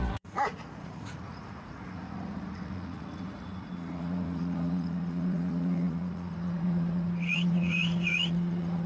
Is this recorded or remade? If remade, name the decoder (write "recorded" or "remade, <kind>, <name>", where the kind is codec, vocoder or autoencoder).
remade, vocoder, Vocos